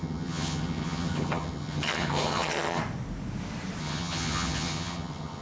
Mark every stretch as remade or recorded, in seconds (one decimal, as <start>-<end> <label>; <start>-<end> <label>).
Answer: 0.0-2.8 remade; 2.8-3.8 recorded; 3.8-5.4 remade